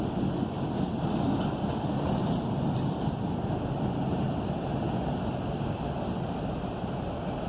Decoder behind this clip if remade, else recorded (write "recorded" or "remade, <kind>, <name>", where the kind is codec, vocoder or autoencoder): recorded